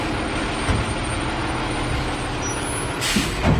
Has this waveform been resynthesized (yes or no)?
no